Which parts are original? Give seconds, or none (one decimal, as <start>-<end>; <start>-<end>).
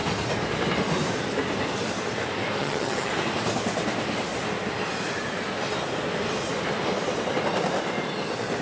0.0-2.6; 3.1-8.6